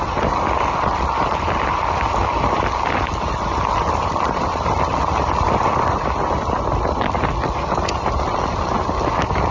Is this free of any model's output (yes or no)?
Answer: no